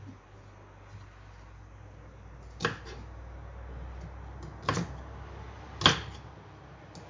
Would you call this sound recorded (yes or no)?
yes